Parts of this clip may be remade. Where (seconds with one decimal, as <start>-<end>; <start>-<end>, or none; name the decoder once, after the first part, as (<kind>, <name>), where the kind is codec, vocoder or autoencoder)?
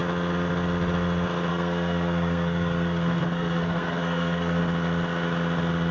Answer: 1.5-4.6 (codec, SNAC)